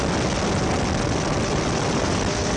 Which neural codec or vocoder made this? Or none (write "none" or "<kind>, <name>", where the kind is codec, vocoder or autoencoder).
none